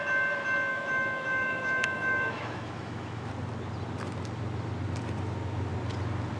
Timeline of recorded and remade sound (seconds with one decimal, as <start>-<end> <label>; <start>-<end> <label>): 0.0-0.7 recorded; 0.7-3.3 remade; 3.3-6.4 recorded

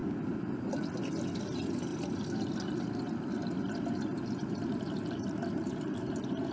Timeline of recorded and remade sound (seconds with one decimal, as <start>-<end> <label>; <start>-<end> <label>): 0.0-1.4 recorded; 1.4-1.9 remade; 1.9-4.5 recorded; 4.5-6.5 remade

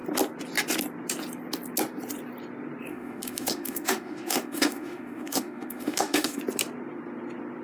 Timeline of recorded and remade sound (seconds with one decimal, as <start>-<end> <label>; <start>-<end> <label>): 0.0-2.9 recorded; 2.9-6.4 remade; 6.4-7.6 recorded

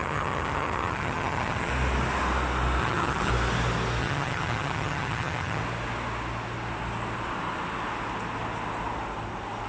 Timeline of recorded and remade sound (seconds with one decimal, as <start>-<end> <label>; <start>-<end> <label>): 0.0-1.7 remade; 1.7-2.8 recorded; 2.8-3.3 remade; 3.3-4.0 recorded; 4.0-5.6 remade; 5.6-9.7 recorded

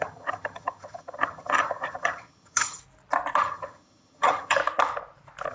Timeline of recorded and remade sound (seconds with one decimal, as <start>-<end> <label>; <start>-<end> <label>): 0.0-2.8 remade; 2.8-3.4 recorded; 3.4-4.6 remade; 4.6-5.5 recorded

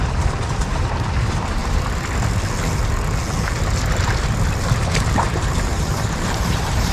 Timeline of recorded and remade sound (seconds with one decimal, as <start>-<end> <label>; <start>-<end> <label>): 0.0-1.6 remade; 1.6-5.2 recorded; 5.2-6.9 remade